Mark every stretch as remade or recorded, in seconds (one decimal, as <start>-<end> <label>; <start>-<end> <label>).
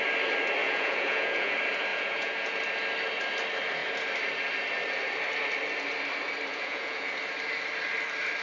0.0-0.6 recorded; 0.6-1.5 remade; 1.5-1.9 recorded; 1.9-2.6 remade; 2.6-6.5 recorded; 6.5-7.2 remade; 7.2-8.4 recorded